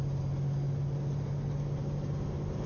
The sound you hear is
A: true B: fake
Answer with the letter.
A